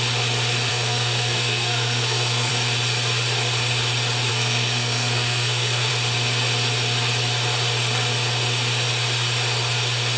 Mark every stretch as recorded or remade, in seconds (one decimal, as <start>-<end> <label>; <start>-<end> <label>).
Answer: 0.0-0.7 recorded; 0.7-2.5 remade; 2.5-4.3 recorded; 4.3-5.9 remade; 5.9-10.2 recorded